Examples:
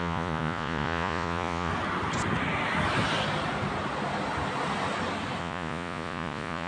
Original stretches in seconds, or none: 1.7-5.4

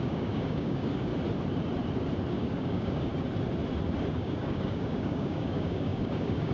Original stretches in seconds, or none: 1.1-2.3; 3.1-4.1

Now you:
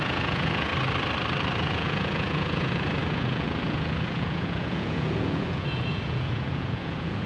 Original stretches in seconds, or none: 0.7-1.6

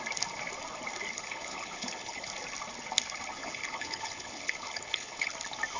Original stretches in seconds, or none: 0.0-1.1; 2.3-3.4; 5.3-5.8

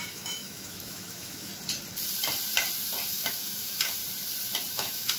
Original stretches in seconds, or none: 1.5-3.1; 4.0-4.7